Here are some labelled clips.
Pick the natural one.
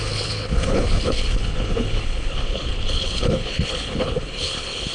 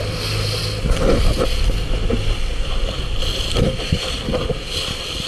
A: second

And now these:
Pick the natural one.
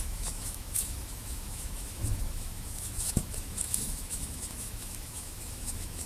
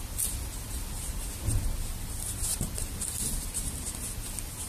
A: second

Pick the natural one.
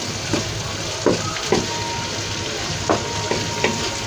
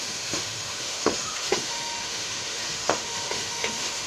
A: first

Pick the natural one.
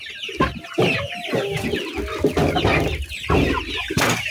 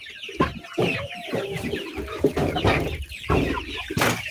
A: first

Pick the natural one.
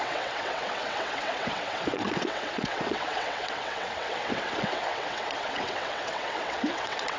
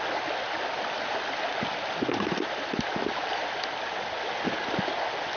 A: second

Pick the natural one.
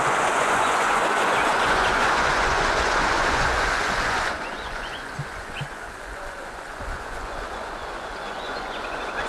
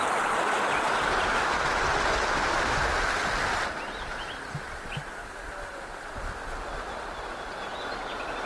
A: second